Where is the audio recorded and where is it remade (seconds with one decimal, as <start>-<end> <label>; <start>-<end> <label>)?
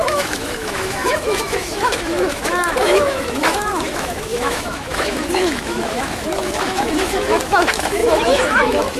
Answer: 0.0-9.0 remade